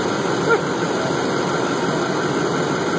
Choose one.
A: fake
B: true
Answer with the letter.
B